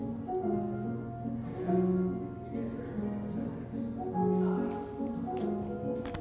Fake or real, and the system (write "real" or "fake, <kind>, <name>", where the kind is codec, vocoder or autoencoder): real